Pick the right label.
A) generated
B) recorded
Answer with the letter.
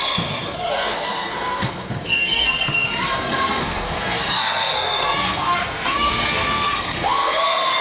A